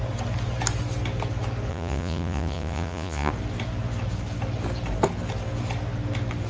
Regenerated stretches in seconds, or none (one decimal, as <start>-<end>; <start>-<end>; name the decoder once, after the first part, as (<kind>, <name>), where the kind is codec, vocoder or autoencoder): 1.7-3.3 (vocoder, Vocos)